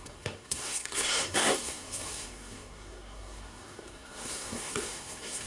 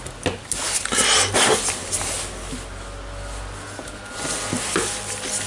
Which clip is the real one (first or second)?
second